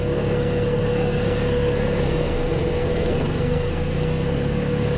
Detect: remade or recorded remade